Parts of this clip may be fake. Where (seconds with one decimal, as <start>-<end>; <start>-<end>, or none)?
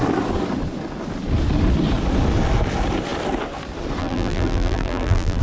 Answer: 4.0-5.4